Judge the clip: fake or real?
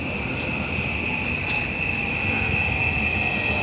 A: real